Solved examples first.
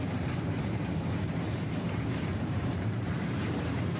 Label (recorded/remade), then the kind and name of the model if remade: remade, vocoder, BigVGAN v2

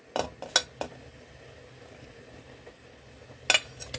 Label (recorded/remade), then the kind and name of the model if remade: recorded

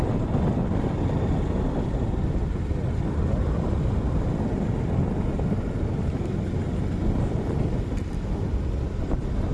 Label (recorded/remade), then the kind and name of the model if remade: recorded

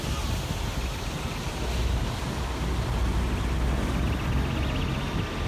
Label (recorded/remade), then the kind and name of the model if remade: recorded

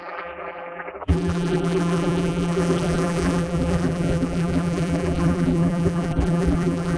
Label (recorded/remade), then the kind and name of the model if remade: remade, vocoder, BigVGAN v2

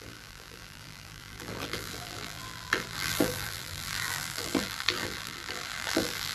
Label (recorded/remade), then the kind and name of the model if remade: remade, vocoder, BigVGAN v2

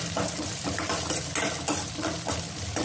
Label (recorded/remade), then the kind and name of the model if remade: recorded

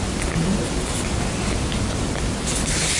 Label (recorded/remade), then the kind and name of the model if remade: recorded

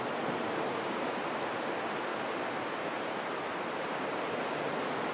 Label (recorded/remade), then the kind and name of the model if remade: recorded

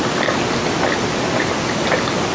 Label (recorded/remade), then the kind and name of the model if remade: remade, vocoder, BigVGAN v2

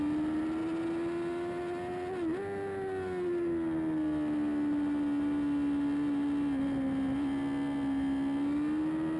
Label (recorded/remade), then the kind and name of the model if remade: recorded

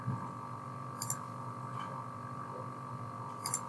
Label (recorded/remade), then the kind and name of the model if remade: recorded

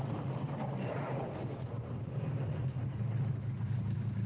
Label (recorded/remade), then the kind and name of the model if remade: remade, vocoder, BigVGAN v2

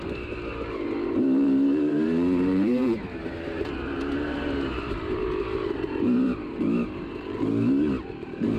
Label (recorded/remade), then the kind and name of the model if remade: remade, vocoder, BigVGAN v2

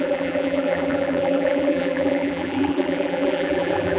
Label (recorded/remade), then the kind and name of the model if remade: remade, vocoder, BigVGAN v2